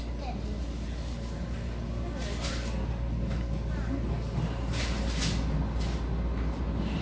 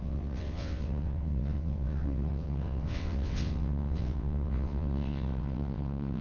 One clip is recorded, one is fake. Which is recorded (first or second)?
first